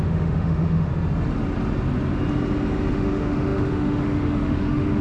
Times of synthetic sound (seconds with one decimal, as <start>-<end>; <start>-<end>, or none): 0.0-0.9; 2.9-5.0